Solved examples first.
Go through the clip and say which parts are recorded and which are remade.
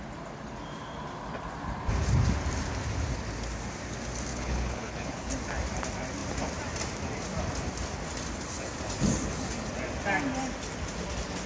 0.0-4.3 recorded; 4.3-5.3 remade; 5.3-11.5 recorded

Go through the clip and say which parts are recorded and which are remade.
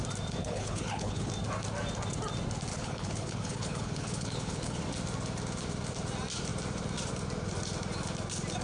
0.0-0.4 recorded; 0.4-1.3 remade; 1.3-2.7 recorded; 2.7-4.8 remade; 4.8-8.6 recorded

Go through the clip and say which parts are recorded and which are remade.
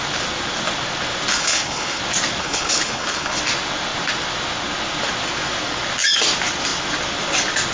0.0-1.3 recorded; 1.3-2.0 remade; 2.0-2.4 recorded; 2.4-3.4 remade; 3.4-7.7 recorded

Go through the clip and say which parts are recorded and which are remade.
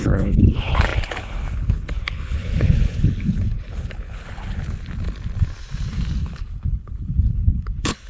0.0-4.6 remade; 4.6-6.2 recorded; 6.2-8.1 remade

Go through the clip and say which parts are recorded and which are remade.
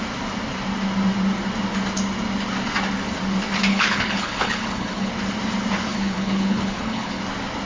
0.0-3.7 recorded; 3.7-5.1 remade; 5.1-5.9 recorded; 5.9-7.2 remade; 7.2-7.7 recorded